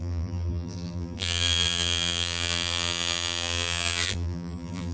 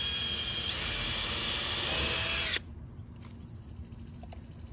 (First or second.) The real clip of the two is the second